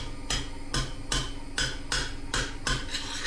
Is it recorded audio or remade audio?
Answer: recorded